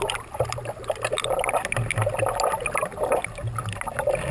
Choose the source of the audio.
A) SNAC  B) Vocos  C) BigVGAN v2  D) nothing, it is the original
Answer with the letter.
D